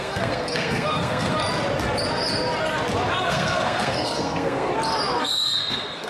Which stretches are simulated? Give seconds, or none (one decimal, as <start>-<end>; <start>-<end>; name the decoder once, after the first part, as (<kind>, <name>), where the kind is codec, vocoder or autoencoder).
0.0-1.4 (codec, SNAC); 3.2-4.7; 5.2-6.1